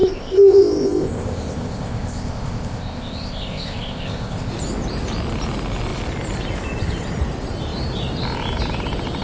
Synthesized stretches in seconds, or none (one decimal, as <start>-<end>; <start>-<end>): 0.0-4.5